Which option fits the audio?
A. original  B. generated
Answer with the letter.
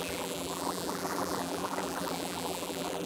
B